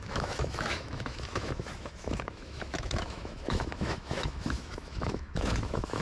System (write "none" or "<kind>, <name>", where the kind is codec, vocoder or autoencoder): autoencoder, DAC-VAE